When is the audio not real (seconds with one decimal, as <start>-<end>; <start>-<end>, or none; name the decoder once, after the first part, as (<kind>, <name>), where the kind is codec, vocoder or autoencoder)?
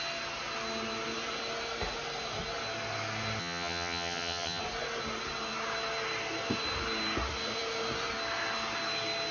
3.4-4.6 (vocoder, HiFi-GAN)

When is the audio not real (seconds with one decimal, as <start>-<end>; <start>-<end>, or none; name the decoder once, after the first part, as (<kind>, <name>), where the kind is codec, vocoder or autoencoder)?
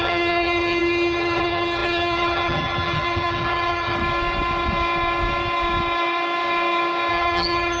0.0-4.0 (vocoder, HiFi-GAN); 7.1-7.8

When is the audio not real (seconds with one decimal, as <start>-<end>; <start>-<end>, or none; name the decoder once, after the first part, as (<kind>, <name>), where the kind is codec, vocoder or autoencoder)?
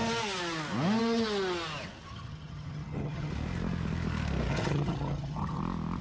2.1-3.3 (vocoder, HiFi-GAN); 4.5-5.6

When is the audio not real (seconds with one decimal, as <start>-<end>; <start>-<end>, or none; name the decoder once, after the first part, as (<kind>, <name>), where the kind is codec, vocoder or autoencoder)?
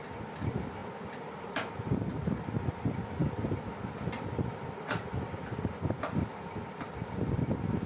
none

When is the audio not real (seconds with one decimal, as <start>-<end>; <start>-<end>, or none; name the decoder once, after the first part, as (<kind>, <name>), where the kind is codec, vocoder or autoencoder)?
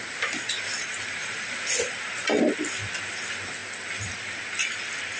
none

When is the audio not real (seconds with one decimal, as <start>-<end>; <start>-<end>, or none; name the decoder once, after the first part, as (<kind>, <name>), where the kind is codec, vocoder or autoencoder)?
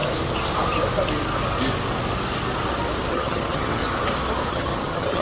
3.1-3.8 (vocoder, HiFi-GAN); 4.5-5.2